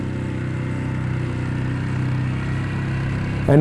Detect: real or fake real